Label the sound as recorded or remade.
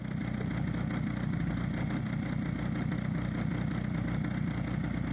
recorded